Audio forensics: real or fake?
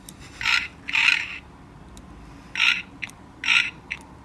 real